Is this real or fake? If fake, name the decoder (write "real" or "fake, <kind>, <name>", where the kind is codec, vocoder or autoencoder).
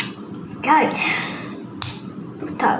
real